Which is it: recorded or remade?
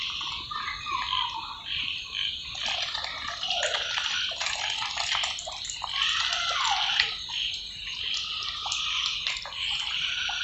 recorded